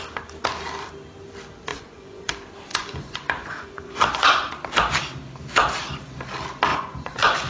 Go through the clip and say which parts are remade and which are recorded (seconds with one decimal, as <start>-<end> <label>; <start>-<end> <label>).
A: 0.0-1.7 recorded; 1.7-2.3 remade; 2.3-2.7 recorded; 2.7-4.5 remade; 4.5-6.7 recorded; 6.7-7.5 remade